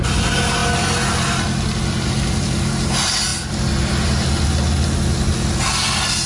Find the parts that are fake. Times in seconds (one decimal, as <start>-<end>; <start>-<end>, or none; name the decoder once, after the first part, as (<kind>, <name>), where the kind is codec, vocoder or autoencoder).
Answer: none